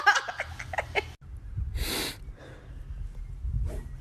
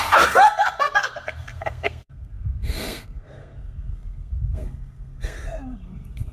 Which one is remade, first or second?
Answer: second